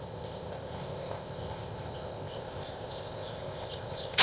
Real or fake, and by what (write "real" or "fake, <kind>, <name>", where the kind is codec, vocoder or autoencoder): fake, codec, ZipCodec